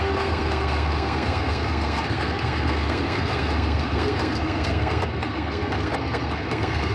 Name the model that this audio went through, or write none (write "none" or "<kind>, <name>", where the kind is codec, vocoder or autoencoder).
codec, SNAC